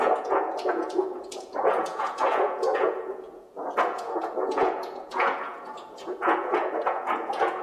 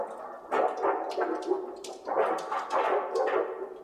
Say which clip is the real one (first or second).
second